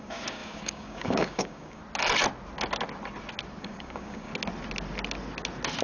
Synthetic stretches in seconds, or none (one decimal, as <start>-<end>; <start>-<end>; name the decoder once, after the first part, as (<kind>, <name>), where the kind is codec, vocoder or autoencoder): 0.0-1.8 (codec, DAC); 3.6-4.3